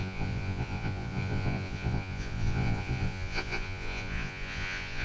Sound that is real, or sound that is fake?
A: fake